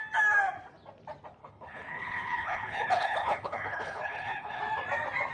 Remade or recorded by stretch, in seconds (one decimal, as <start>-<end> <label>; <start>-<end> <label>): 0.0-1.4 recorded; 1.4-4.6 remade; 4.6-5.3 recorded